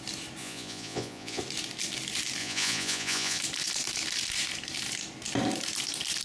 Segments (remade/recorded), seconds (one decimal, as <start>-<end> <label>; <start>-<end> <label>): 0.0-0.4 recorded; 0.4-1.4 remade; 1.4-2.4 recorded; 2.4-3.4 remade; 3.4-6.2 recorded